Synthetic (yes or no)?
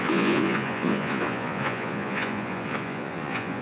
yes